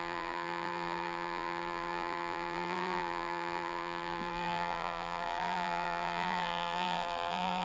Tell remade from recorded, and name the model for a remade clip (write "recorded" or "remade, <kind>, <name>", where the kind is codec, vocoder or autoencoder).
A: remade, vocoder, BigVGAN v2